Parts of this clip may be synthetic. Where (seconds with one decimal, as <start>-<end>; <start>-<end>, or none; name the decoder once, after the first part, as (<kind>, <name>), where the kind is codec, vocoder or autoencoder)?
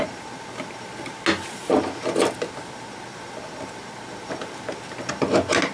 none